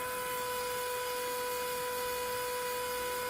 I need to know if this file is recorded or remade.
recorded